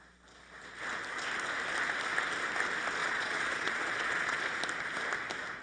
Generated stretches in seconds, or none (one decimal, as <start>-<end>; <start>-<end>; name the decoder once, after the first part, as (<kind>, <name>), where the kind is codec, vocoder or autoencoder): 3.0-4.4 (vocoder, Vocos)